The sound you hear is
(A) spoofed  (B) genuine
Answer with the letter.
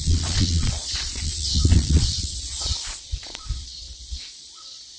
A